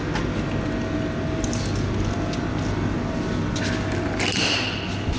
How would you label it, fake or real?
real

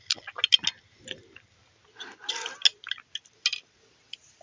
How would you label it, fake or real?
real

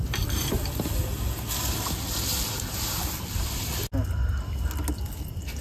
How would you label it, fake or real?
real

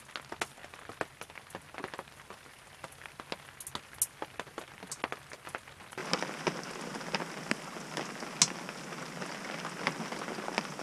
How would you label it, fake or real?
real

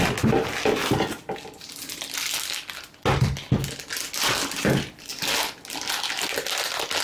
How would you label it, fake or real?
real